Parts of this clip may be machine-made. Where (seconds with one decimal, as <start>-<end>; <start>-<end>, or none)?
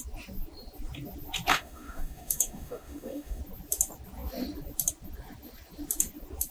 1.5-3.4